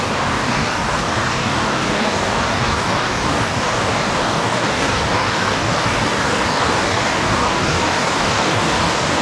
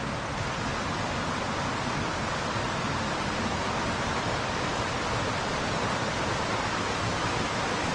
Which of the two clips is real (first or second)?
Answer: second